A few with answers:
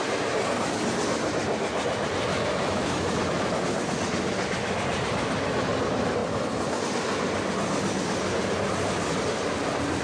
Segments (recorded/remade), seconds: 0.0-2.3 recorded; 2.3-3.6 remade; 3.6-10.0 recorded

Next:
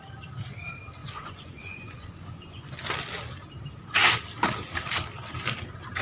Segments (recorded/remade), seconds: 0.0-1.0 recorded; 1.0-2.7 remade; 2.7-6.0 recorded

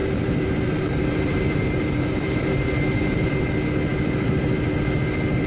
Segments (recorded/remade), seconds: 0.0-3.3 remade; 3.3-5.5 recorded

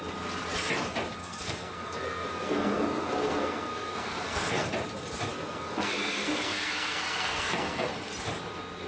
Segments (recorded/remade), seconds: 0.0-1.2 recorded; 1.2-4.7 remade; 4.7-5.3 recorded; 5.3-7.9 remade; 7.9-8.9 recorded

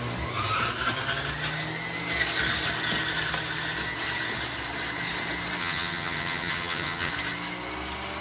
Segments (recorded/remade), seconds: 0.0-5.6 recorded; 5.6-7.1 remade; 7.1-8.2 recorded

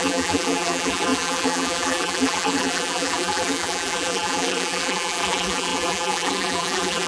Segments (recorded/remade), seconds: 0.0-7.1 remade

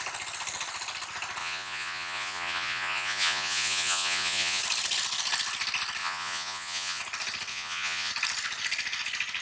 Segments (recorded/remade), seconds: 0.0-1.4 recorded; 1.4-4.6 remade; 4.6-6.0 recorded; 6.0-7.0 remade; 7.0-7.5 recorded; 7.5-8.1 remade; 8.1-9.4 recorded

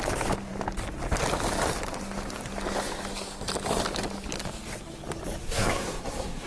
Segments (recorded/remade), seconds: 0.0-5.4 recorded; 5.4-6.5 remade